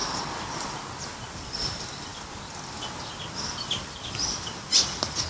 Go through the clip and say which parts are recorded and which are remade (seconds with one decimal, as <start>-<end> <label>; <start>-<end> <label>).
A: 0.0-5.3 recorded

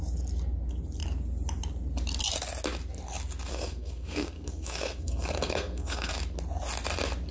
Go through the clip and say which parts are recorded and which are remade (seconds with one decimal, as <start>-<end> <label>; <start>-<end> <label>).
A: 0.0-3.5 recorded; 3.5-6.1 remade; 6.1-7.3 recorded